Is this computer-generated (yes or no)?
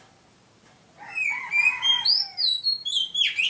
no